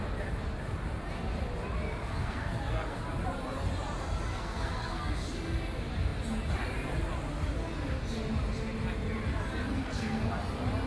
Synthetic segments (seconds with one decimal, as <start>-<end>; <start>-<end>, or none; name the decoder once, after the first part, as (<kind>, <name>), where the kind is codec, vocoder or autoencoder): 2.1-3.0 (codec, SNAC); 4.3-5.1; 9.6-10.3